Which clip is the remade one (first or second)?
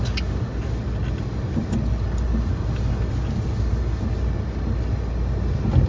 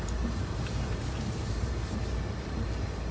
second